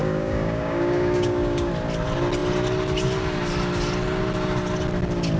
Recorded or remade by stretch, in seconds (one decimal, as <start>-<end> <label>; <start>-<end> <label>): 0.0-1.7 remade; 1.7-5.4 recorded